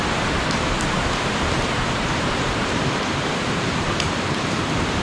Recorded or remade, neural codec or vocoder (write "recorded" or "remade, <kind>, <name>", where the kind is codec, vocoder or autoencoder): remade, vocoder, BigVGAN v2